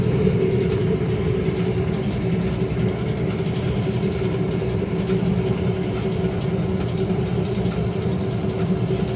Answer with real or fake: real